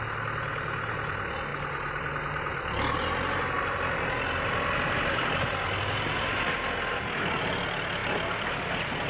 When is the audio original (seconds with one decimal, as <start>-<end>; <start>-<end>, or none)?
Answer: 0.0-9.1